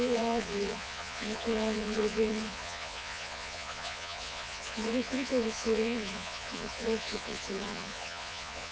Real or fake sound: fake